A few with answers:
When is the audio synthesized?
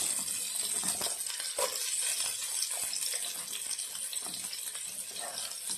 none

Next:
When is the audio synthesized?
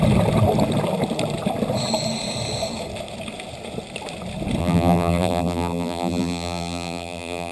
4.6-7.5 (vocoder, BigVGAN v2)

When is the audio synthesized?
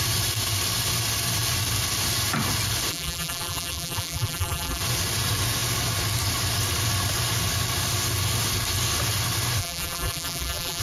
2.9-4.8 (vocoder, BigVGAN v2); 9.6-10.8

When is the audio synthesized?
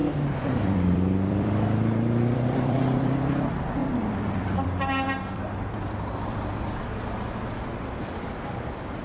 0.0-9.0 (vocoder, BigVGAN v2)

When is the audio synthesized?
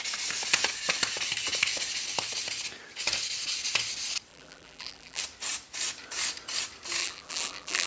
4.3-5.2 (vocoder, BigVGAN v2); 7.0-7.9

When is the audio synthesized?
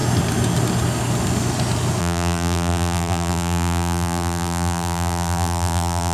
2.0-6.1 (vocoder, BigVGAN v2)